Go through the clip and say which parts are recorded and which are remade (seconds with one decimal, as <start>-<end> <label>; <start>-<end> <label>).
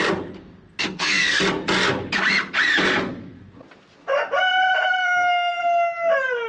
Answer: 0.0-0.8 recorded; 0.8-1.4 remade; 1.4-5.0 recorded; 5.0-5.6 remade; 5.6-6.5 recorded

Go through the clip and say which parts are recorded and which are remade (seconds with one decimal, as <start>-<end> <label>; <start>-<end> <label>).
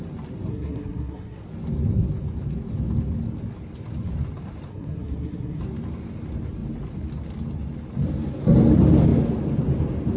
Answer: 0.0-0.5 recorded; 0.5-1.4 remade; 1.4-4.7 recorded; 4.7-5.6 remade; 5.6-10.2 recorded